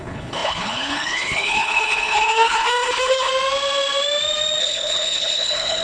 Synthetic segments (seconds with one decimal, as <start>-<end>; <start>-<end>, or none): 0.0-3.3; 4.6-5.8